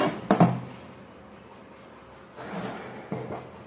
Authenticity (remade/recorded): recorded